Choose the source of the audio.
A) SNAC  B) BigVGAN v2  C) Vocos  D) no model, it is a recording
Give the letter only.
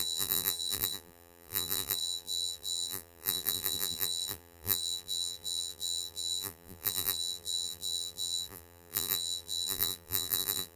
B